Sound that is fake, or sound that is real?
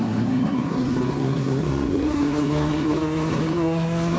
fake